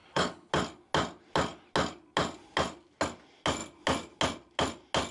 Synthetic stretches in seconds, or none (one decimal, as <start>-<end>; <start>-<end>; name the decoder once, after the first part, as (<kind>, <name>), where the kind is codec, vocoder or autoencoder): 0.0-0.5 (codec, HILCodec)